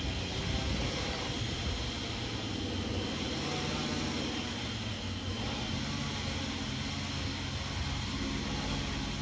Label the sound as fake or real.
real